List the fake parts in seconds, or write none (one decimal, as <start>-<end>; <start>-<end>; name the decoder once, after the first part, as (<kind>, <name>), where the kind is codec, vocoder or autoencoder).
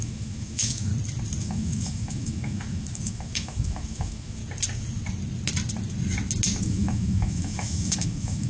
0.0-0.9 (autoencoder, DAC-VAE); 1.4-4.4; 6.6-8.5